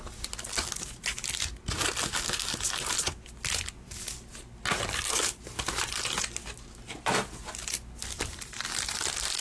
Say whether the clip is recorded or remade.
recorded